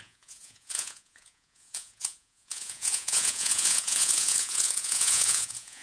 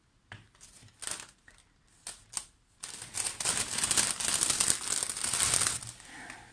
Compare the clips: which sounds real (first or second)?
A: second